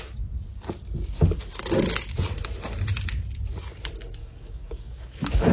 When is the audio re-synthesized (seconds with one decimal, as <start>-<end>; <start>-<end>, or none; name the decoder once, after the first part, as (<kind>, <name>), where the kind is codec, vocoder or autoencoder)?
4.2-5.5 (codec, DAC)